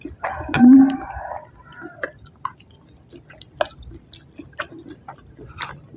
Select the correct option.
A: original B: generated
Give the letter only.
A